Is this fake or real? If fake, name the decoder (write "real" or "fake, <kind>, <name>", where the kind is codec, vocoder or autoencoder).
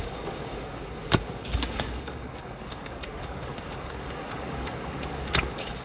fake, codec, DAC